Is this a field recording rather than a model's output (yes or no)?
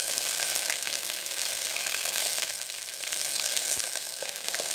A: no